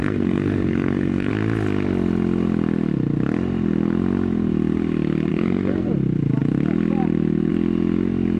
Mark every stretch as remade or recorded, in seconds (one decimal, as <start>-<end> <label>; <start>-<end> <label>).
0.0-1.3 remade; 1.3-5.3 recorded; 5.3-5.9 remade; 5.9-8.4 recorded